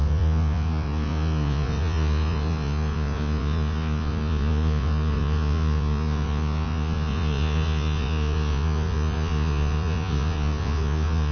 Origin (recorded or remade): remade